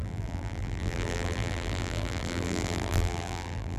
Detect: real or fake fake